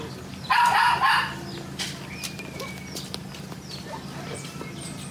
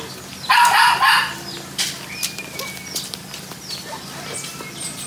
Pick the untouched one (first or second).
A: second